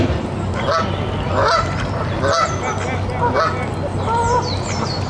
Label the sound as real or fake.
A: real